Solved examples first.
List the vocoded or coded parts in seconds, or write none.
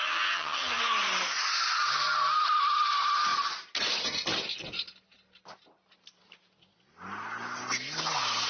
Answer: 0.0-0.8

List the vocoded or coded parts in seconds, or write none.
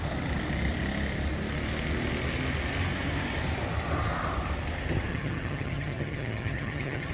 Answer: 5.1-7.1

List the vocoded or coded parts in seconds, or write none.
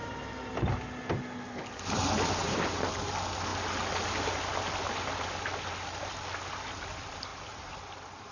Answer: none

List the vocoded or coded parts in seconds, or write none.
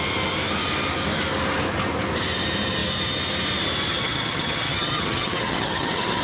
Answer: 3.9-6.2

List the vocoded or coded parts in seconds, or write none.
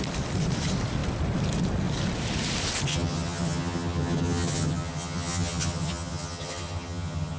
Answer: 2.9-7.4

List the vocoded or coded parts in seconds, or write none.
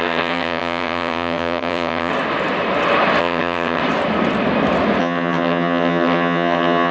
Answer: 0.0-2.1; 3.2-3.8; 5.0-6.9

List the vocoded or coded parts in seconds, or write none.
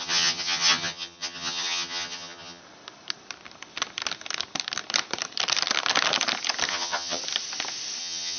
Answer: 0.0-2.6; 6.7-7.2; 8.0-8.4